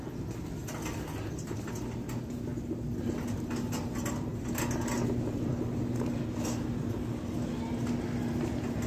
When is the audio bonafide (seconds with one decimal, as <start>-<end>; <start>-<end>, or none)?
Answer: 0.0-8.9